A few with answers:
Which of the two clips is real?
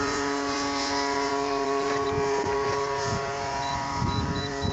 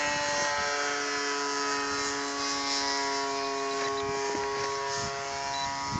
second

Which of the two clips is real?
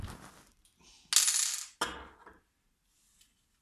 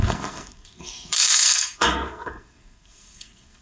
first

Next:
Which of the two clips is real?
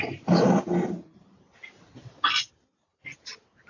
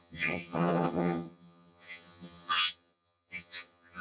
first